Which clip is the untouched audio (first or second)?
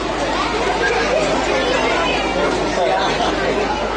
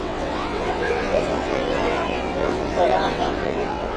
first